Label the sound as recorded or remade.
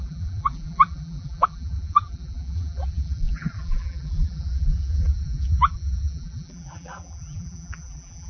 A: remade